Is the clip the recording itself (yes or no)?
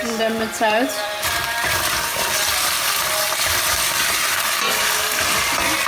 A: no